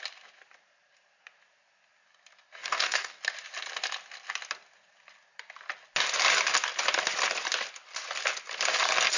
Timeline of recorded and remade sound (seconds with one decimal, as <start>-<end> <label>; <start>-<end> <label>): 0.0-2.6 recorded; 2.6-3.2 remade; 3.2-9.2 recorded